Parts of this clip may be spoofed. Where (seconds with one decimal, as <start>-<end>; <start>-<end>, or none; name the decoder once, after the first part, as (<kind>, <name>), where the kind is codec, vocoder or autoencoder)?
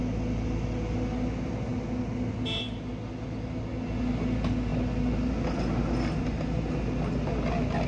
none